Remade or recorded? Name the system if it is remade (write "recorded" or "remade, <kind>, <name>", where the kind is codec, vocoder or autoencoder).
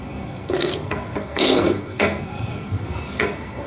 remade, codec, SNAC